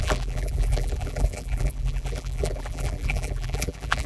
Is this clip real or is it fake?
fake